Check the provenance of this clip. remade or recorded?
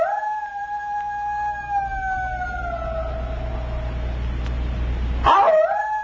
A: recorded